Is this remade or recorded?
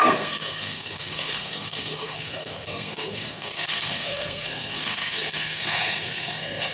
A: remade